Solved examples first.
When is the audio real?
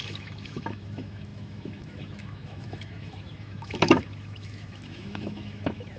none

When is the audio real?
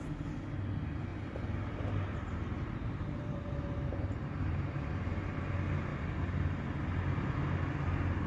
0.0-1.1; 5.5-8.3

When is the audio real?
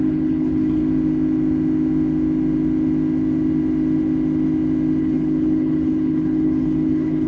0.8-5.0